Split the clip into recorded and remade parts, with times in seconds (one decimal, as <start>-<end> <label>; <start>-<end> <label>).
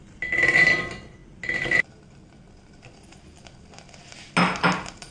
0.0-5.1 recorded